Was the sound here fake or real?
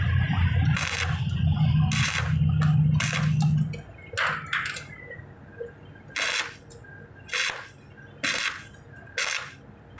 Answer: real